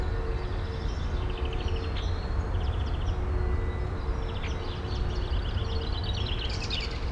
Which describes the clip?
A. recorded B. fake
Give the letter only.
A